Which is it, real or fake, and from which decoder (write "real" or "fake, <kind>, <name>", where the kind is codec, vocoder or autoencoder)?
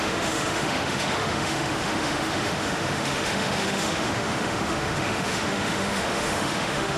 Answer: fake, autoencoder, DAC-VAE